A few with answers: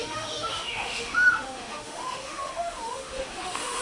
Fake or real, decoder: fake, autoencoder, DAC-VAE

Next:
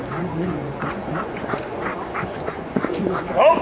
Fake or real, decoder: fake, vocoder, Vocos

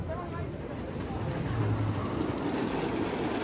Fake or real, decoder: real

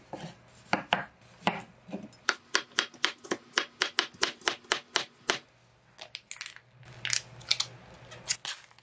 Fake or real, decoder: real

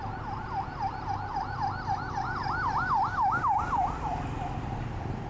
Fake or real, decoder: real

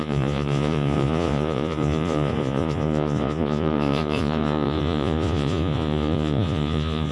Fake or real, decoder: fake, vocoder, Vocos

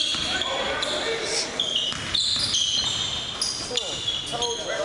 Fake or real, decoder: real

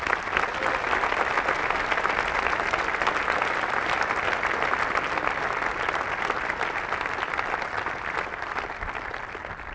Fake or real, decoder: real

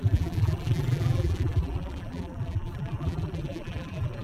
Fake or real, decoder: fake, vocoder, BigVGAN v2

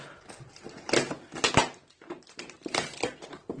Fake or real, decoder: real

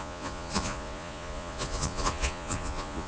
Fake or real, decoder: fake, vocoder, Vocos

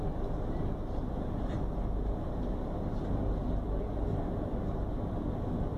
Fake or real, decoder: real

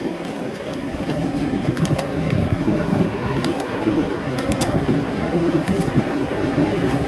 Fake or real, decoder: fake, codec, SNAC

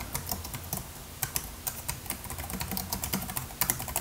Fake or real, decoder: real